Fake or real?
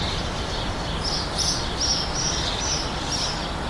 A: real